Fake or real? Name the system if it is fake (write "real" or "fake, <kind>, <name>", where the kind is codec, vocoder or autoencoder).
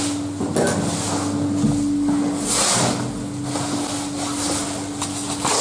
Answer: real